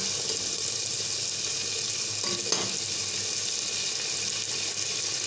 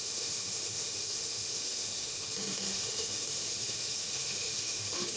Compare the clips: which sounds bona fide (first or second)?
first